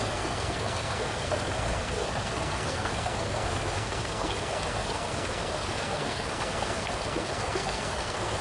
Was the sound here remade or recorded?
remade